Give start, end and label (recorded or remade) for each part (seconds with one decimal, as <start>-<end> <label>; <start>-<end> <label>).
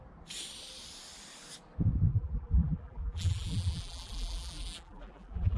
0.0-2.1 recorded; 2.1-5.6 remade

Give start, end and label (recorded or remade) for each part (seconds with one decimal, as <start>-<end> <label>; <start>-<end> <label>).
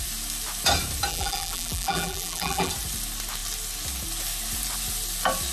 0.0-1.1 recorded; 1.1-2.7 remade; 2.7-5.5 recorded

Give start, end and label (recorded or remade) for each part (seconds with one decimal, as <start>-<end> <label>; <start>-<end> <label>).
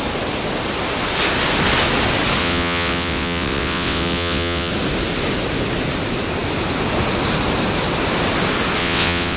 0.0-2.4 recorded; 2.4-4.7 remade; 4.7-8.8 recorded; 8.8-9.4 remade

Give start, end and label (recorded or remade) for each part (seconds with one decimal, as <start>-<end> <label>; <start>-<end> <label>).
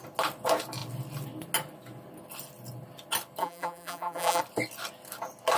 0.0-3.4 recorded; 3.4-4.4 remade; 4.4-5.6 recorded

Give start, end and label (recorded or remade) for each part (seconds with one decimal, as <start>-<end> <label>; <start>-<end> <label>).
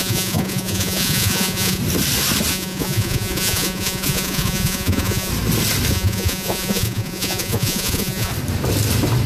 0.0-1.8 remade; 1.8-2.5 recorded; 2.5-5.3 remade; 5.3-5.9 recorded; 5.9-8.3 remade; 8.3-9.3 recorded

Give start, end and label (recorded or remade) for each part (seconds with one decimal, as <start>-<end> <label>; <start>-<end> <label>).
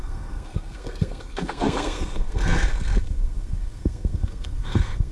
0.0-5.1 remade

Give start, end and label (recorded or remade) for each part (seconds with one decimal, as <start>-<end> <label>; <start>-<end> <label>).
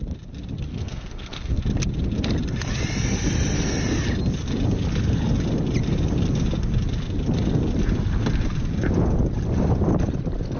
0.0-0.7 recorded; 0.7-1.6 remade; 1.6-10.6 recorded